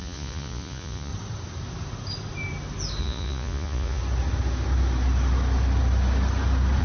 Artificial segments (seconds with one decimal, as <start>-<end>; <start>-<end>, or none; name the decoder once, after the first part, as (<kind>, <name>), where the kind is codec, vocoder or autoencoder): 0.0-1.1 (vocoder, Vocos); 3.0-4.0

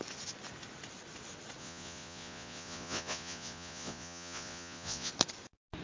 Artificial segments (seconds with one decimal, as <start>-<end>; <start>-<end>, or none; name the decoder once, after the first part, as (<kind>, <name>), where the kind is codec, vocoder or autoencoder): 1.6-5.1 (vocoder, Vocos)

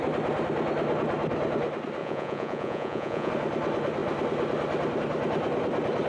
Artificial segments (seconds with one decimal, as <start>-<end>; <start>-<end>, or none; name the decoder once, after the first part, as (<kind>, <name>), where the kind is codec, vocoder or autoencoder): 2.0-3.3 (vocoder, Vocos)

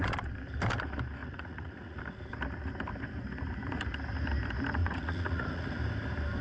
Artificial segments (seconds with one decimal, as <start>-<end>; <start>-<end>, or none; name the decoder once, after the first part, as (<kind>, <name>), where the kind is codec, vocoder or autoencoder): 1.2-2.0 (vocoder, Vocos); 4.8-5.8

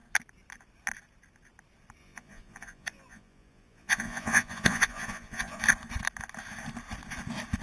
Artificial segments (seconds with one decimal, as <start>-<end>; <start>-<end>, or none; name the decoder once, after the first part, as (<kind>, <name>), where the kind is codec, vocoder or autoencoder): 2.0-5.6 (vocoder, Vocos)

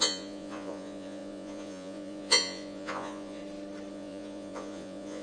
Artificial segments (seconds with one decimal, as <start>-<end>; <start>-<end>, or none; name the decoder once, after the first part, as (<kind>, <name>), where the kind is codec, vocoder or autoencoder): 0.0-3.4 (vocoder, Vocos); 3.9-5.2

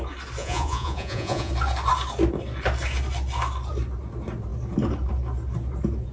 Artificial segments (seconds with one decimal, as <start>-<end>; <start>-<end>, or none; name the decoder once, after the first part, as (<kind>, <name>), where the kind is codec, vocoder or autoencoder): 0.4-1.5 (vocoder, Vocos)

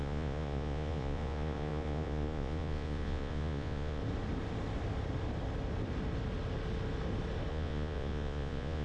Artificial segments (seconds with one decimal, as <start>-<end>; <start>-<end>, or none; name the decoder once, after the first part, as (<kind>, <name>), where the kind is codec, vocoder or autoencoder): 0.0-4.0 (vocoder, Vocos); 7.5-8.8